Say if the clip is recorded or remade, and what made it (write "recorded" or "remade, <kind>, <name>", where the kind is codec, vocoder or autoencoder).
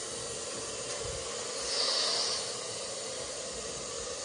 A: recorded